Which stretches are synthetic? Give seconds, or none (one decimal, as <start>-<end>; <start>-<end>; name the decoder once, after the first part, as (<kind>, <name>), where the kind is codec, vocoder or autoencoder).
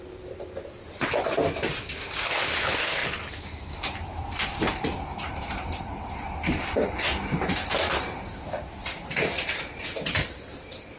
3.0-6.1 (vocoder, BigVGAN v2); 8.8-11.0